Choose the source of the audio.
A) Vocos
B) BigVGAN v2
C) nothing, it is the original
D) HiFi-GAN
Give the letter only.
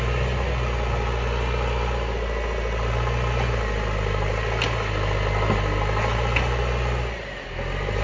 C